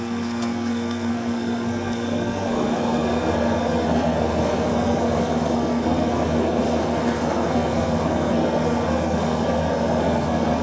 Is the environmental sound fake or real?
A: fake